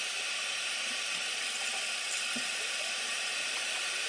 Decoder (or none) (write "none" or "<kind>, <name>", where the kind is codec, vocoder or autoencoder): none